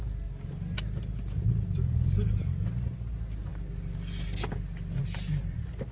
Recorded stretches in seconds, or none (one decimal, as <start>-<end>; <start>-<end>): 0.0-5.9